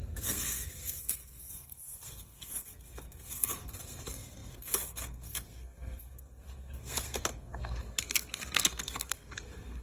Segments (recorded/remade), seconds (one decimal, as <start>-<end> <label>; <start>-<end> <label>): 0.0-9.8 remade